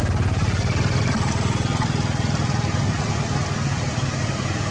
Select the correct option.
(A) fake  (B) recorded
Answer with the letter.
B